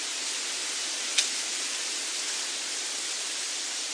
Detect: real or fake real